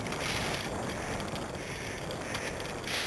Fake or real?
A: real